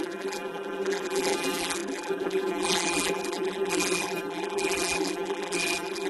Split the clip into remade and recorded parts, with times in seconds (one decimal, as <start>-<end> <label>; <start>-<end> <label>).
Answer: 0.0-6.1 remade